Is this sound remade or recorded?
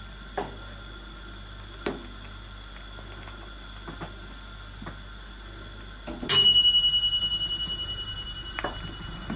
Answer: recorded